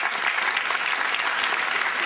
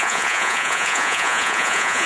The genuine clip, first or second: first